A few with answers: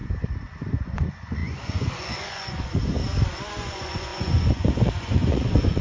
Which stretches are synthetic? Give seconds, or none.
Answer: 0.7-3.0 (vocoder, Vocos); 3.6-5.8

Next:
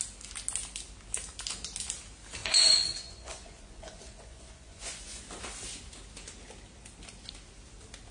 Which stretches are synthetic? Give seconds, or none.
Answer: 2.4-5.2 (vocoder, Vocos)

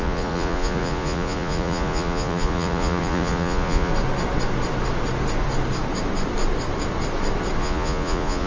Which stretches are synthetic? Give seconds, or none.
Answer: 0.0-3.9 (vocoder, Vocos); 7.6-8.5

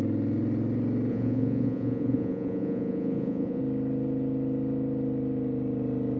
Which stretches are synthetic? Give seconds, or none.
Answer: 1.1-3.6 (vocoder, Vocos)